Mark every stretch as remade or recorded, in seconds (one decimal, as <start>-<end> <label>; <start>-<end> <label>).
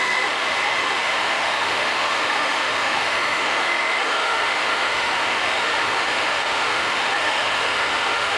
0.0-8.4 remade